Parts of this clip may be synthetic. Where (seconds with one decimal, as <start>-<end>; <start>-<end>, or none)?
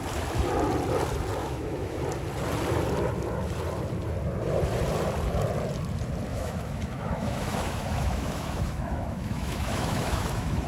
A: 1.4-2.0; 6.3-10.7